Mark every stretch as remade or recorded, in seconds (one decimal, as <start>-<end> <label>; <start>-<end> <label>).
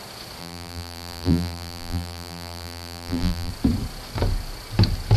0.0-0.4 recorded; 0.4-3.5 remade; 3.5-5.2 recorded